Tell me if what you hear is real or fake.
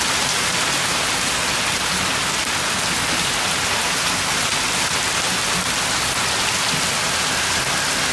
real